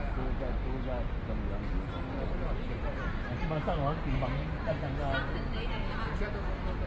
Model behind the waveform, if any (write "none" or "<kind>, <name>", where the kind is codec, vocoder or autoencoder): none